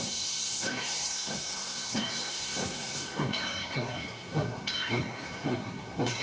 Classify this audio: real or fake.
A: fake